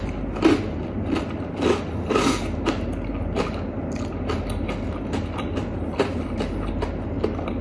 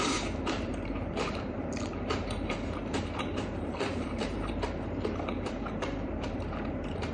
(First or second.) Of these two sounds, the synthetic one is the second